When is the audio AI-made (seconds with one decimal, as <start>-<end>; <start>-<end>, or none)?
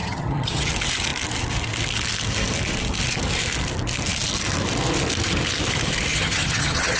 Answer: 0.0-0.7; 6.1-7.0